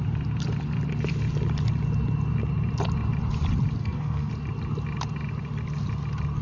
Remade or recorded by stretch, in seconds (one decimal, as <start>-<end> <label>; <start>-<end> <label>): 0.0-3.8 recorded; 3.8-4.3 remade; 4.3-6.4 recorded